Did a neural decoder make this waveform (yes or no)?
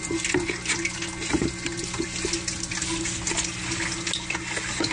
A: no